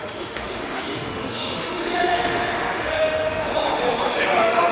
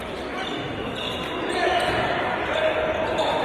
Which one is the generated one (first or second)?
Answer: first